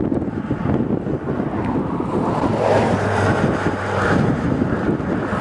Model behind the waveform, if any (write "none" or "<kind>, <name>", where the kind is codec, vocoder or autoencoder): vocoder, BigVGAN v2